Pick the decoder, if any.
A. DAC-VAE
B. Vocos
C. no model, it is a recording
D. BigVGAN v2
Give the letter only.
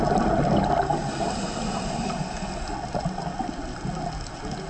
C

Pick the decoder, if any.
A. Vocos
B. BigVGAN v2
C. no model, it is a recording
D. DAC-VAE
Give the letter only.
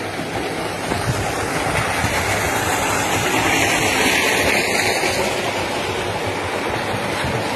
C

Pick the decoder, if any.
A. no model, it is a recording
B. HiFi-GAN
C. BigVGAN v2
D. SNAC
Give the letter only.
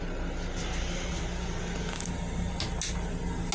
A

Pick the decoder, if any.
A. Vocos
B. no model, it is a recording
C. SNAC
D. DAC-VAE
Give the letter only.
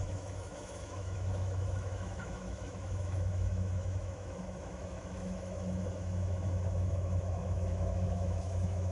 D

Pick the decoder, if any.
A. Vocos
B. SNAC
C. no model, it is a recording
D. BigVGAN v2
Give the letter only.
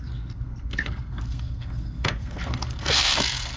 B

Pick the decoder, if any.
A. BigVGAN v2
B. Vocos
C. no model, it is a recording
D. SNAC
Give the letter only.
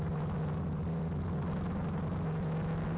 C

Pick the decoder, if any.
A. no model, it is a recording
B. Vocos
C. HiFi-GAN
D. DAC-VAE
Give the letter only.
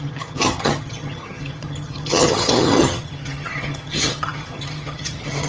C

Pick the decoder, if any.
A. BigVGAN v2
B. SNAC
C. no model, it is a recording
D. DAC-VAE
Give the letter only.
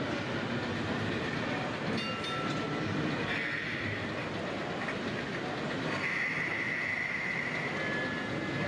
C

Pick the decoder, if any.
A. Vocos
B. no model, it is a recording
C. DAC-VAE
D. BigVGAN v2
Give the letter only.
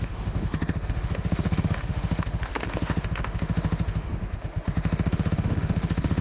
C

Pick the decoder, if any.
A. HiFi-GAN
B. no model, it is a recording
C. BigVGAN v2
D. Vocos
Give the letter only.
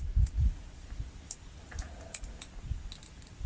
B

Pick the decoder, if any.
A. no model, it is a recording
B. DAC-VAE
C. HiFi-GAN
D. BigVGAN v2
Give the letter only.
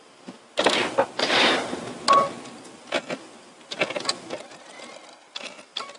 A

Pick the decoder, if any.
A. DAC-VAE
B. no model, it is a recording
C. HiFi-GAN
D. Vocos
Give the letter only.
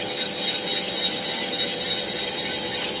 B